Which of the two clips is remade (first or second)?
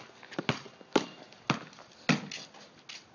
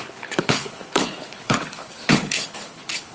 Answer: second